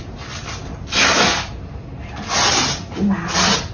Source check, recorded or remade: recorded